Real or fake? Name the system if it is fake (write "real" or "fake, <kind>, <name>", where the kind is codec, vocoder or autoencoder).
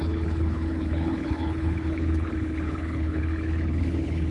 fake, codec, HILCodec